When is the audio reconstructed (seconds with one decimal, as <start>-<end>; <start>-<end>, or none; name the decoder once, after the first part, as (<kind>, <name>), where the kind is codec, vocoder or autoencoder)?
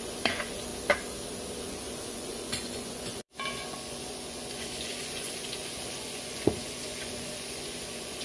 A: 0.0-0.7 (vocoder, Vocos); 1.6-8.2